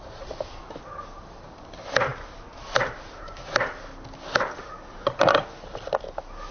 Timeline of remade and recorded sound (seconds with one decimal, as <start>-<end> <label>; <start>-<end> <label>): 0.0-6.5 recorded

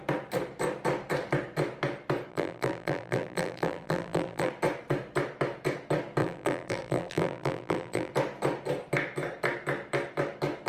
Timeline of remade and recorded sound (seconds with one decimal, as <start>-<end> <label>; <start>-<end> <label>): 0.0-2.3 recorded; 2.3-4.5 remade; 4.5-6.2 recorded; 6.2-8.1 remade; 8.1-10.7 recorded

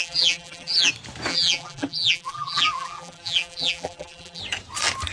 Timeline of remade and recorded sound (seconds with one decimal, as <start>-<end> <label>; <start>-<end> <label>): 0.0-0.9 remade; 0.9-1.3 recorded; 1.3-4.4 remade; 4.4-5.1 recorded

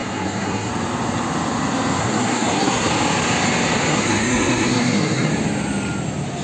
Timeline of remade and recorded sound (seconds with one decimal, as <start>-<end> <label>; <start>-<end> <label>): 0.0-0.7 remade; 0.7-2.0 recorded; 2.0-2.9 remade; 2.9-3.9 recorded; 3.9-5.3 remade; 5.3-6.4 recorded

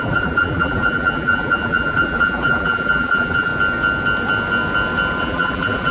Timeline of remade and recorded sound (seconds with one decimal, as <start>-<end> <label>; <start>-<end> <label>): 0.0-3.5 remade; 3.5-5.2 recorded; 5.2-5.9 remade

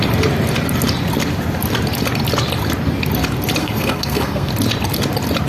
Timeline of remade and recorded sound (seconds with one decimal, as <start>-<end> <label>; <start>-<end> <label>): 0.0-3.6 recorded; 3.6-4.5 remade; 4.5-5.5 recorded